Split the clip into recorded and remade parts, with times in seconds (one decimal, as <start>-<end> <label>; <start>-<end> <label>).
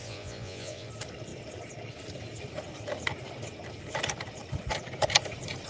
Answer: 0.0-0.9 remade; 0.9-5.7 recorded